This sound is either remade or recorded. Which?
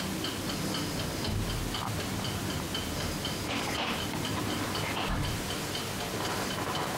recorded